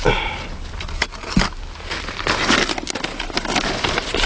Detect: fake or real real